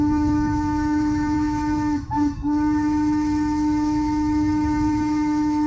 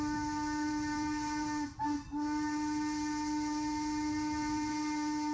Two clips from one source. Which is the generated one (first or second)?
first